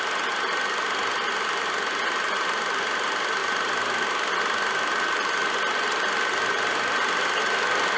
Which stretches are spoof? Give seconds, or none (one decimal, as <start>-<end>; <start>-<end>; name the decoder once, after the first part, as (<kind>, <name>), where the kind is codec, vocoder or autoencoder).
none